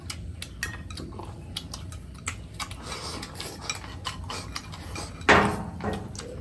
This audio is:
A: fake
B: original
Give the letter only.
B